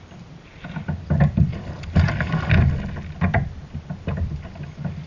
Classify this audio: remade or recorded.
recorded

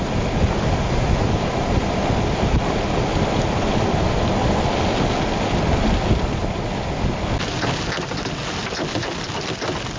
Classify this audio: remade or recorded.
recorded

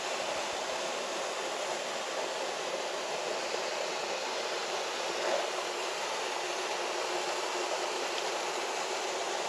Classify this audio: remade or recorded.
recorded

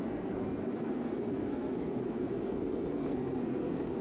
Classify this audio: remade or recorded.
remade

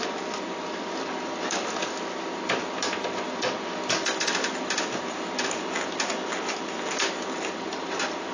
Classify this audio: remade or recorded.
recorded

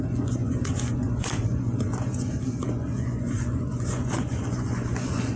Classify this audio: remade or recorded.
remade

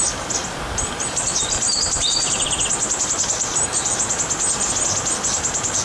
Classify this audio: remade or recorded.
recorded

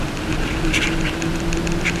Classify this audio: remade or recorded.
recorded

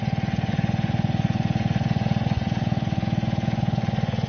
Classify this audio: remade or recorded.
remade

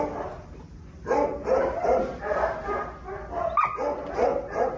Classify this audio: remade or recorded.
recorded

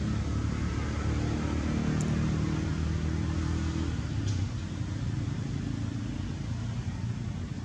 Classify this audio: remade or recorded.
recorded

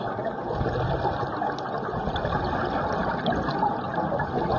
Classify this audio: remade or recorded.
recorded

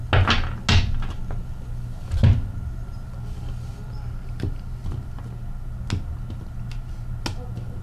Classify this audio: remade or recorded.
recorded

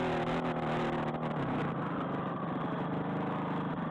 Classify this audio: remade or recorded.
recorded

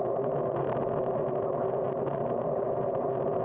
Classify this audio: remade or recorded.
recorded